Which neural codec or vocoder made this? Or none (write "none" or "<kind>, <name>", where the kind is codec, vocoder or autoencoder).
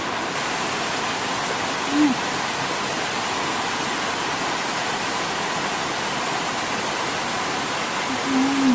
none